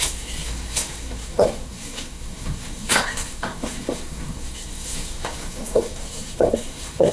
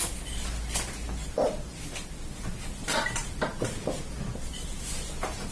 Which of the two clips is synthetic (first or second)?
first